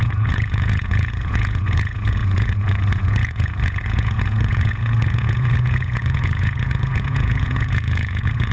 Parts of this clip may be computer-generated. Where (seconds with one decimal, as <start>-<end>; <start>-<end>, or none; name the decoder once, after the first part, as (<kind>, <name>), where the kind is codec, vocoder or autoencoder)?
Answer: 0.0-8.5 (vocoder, Vocos)